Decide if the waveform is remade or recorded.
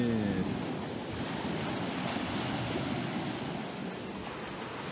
recorded